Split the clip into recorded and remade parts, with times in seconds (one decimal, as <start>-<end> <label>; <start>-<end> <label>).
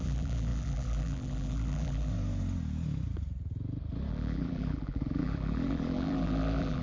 0.0-2.1 remade; 2.1-4.1 recorded; 4.1-6.8 remade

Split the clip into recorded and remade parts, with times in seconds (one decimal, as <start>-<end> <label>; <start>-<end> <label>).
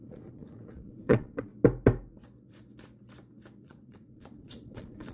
0.0-1.5 remade; 1.5-3.6 recorded; 3.6-5.1 remade